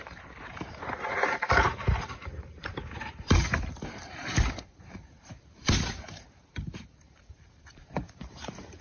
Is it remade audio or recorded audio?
remade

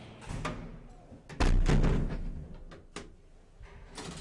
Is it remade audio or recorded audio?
recorded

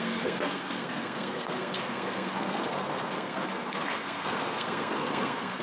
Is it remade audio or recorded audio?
remade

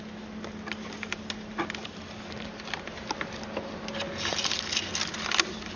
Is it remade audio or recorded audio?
recorded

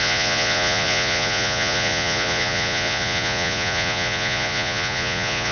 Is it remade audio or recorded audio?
remade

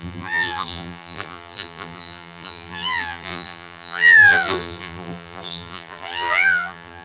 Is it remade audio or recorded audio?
remade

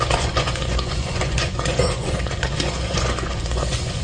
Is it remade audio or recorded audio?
remade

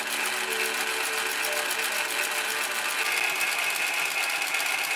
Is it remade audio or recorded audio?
recorded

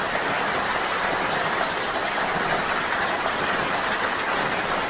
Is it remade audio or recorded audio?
recorded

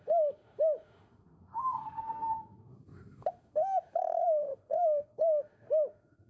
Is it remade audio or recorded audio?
remade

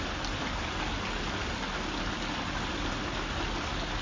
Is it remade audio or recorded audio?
recorded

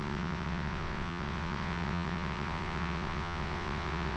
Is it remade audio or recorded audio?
remade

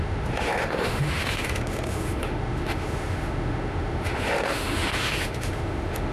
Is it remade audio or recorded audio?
remade